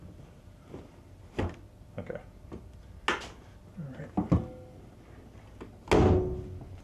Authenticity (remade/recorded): recorded